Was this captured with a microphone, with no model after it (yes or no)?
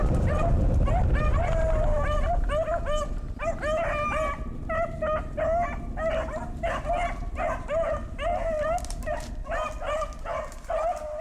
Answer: yes